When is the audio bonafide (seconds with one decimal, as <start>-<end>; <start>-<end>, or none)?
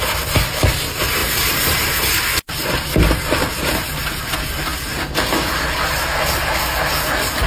0.0-1.2; 4.2-7.5